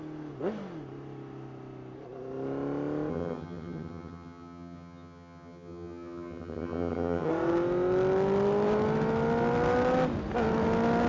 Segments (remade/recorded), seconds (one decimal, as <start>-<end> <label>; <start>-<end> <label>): 0.0-3.1 recorded; 3.1-7.3 remade; 7.3-11.1 recorded